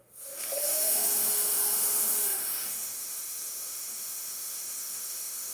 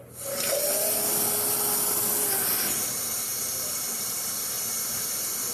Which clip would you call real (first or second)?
second